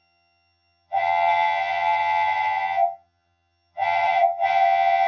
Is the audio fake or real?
fake